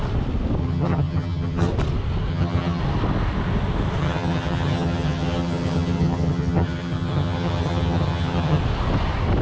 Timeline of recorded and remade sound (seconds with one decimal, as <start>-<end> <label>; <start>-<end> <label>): 0.0-0.6 recorded; 0.6-1.7 remade; 1.7-2.3 recorded; 2.3-2.8 remade; 2.8-4.0 recorded; 4.0-8.6 remade; 8.6-9.4 recorded